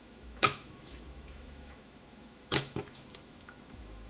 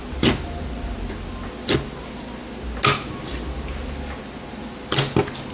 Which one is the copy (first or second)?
first